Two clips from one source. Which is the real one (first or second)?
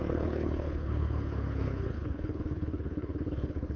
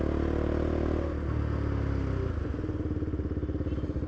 second